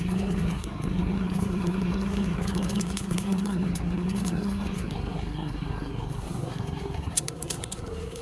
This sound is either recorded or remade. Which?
remade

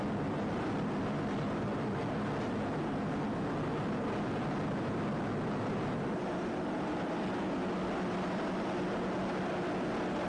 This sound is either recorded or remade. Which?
recorded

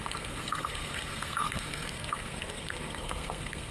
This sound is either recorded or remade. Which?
remade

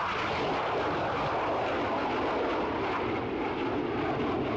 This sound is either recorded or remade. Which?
recorded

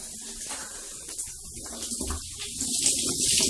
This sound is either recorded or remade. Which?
recorded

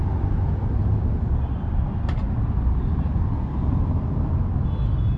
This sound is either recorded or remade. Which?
recorded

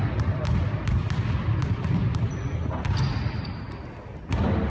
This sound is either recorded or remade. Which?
recorded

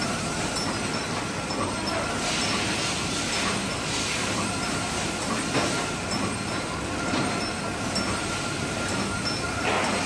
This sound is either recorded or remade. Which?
recorded